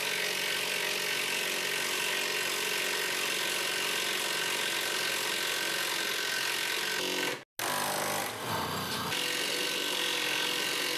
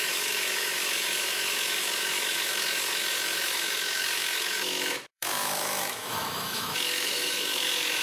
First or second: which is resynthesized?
second